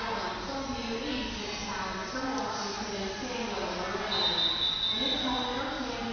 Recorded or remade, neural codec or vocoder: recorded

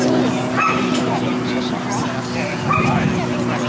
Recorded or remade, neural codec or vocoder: recorded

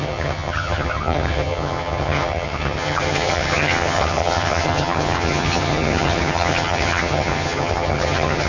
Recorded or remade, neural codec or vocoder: remade, vocoder, HiFi-GAN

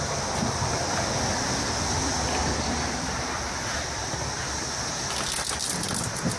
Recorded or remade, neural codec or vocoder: remade, vocoder, BigVGAN v2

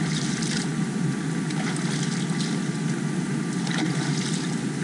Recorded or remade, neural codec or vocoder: recorded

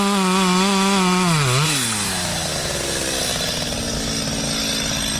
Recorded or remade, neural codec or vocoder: recorded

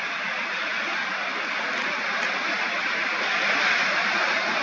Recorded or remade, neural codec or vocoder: recorded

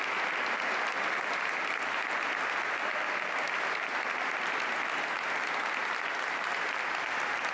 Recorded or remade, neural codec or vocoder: recorded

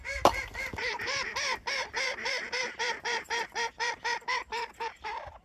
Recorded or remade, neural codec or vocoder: remade, vocoder, BigVGAN v2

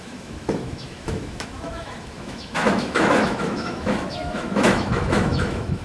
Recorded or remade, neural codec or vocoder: remade, autoencoder, DAC-VAE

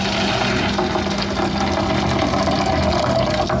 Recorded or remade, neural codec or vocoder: recorded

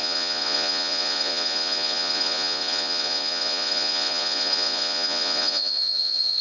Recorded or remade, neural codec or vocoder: remade, vocoder, Vocos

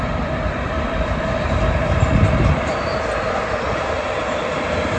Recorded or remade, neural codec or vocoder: remade, vocoder, BigVGAN v2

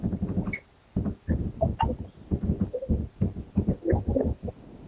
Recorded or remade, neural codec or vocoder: recorded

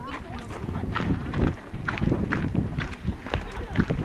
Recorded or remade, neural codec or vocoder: remade, vocoder, BigVGAN v2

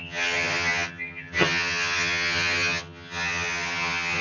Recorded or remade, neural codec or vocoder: remade, vocoder, HiFi-GAN